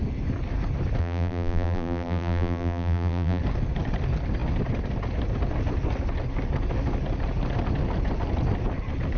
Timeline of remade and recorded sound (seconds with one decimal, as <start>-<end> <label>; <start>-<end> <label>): 0.0-1.0 recorded; 1.0-3.4 remade; 3.4-9.2 recorded